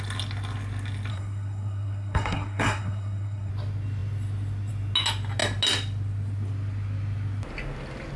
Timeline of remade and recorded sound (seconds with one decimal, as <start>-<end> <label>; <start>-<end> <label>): 0.0-1.1 recorded; 1.1-3.5 remade; 3.5-8.2 recorded